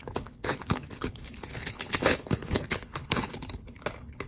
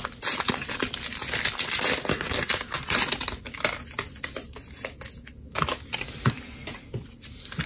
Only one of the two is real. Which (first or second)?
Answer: second